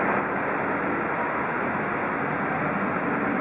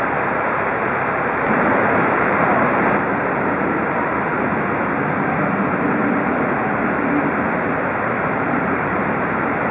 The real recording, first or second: first